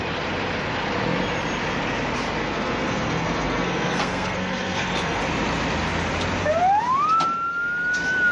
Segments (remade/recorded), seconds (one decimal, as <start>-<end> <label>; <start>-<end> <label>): 0.0-2.4 recorded; 2.4-5.2 remade; 5.2-8.3 recorded